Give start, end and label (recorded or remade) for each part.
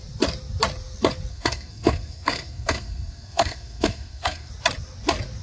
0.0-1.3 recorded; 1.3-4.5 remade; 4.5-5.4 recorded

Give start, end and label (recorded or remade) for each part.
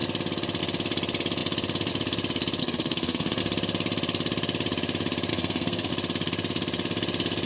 0.0-2.6 recorded; 2.6-3.4 remade; 3.4-5.3 recorded; 5.3-5.9 remade; 5.9-7.5 recorded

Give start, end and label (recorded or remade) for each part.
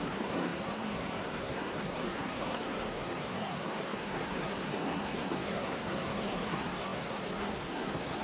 0.0-8.2 remade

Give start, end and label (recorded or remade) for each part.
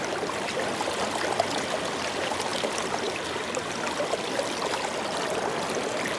0.0-6.2 recorded